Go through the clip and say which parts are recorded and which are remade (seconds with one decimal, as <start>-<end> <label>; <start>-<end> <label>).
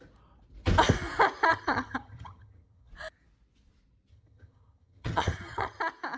0.0-1.5 recorded; 1.5-2.9 remade; 2.9-4.1 recorded; 4.1-5.8 remade; 5.8-6.2 recorded